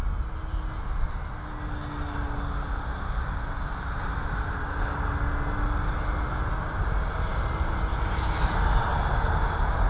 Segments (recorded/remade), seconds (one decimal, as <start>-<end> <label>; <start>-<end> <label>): 0.0-9.9 recorded